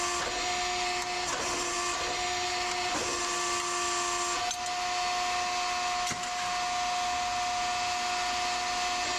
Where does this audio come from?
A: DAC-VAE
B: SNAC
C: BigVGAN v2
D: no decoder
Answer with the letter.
D